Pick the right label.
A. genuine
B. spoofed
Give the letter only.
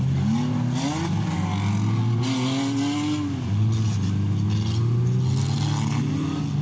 A